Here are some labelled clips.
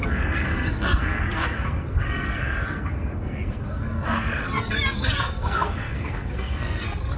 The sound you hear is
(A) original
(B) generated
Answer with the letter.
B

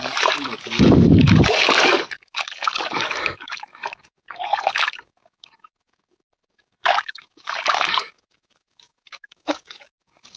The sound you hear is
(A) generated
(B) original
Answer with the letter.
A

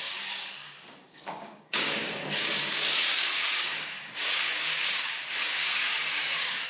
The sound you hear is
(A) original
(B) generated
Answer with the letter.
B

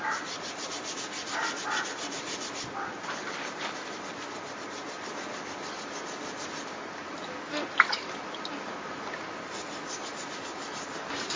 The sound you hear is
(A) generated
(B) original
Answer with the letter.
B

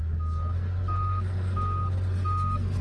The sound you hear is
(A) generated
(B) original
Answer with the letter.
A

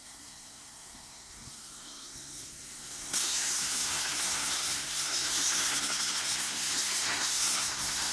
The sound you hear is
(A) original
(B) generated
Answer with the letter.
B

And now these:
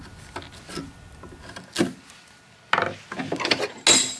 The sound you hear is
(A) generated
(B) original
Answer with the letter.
B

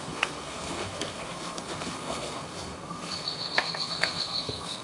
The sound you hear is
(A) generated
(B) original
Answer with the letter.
A